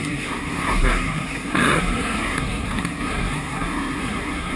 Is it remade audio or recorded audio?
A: remade